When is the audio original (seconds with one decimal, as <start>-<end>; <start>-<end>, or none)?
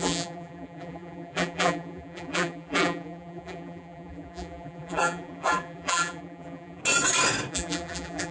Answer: 6.8-7.5